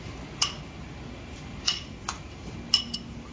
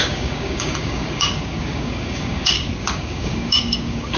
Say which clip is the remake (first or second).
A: second